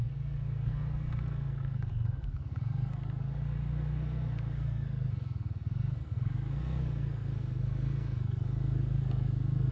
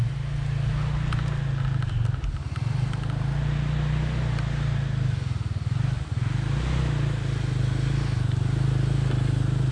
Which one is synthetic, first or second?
first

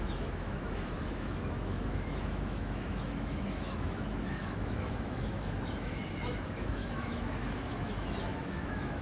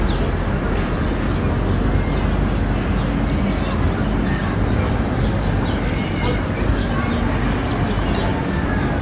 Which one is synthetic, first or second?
first